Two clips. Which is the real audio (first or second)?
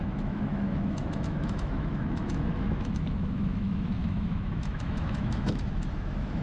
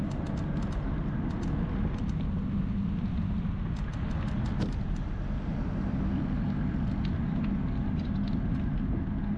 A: second